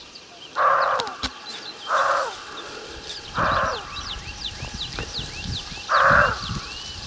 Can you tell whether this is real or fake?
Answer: real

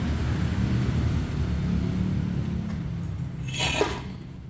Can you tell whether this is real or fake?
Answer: real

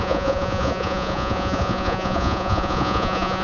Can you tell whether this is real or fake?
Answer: fake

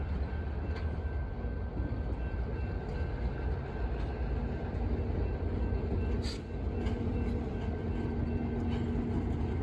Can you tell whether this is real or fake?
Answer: real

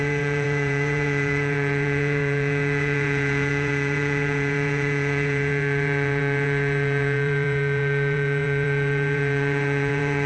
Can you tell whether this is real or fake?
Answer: fake